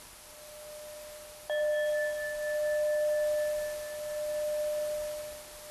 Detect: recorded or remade recorded